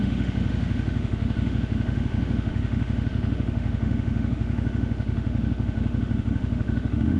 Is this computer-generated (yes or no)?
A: yes